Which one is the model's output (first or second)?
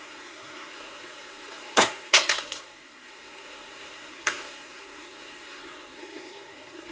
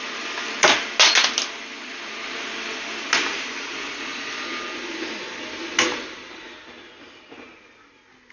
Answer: first